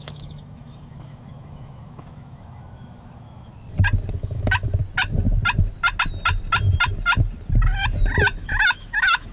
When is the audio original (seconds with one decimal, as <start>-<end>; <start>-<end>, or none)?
3.5-4.1; 4.8-8.4